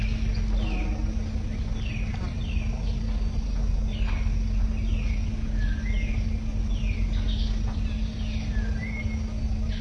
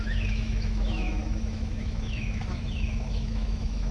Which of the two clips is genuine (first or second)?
first